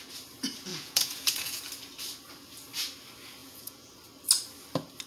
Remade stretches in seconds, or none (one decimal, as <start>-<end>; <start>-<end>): 0.7-1.6; 3.4-3.9